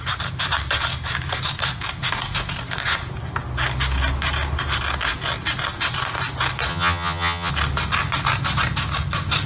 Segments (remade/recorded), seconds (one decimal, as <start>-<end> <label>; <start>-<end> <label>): 0.0-6.7 recorded; 6.7-7.5 remade; 7.5-9.5 recorded